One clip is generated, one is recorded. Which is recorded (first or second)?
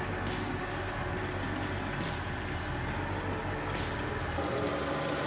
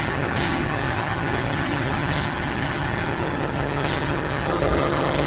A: first